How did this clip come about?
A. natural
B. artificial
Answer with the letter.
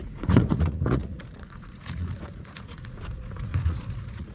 B